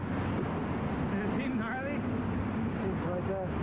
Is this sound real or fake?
real